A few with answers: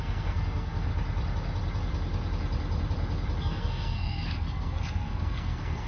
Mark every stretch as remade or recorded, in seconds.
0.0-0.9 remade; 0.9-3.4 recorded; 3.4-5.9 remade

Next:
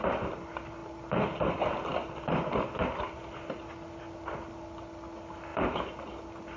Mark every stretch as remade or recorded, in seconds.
0.0-6.6 recorded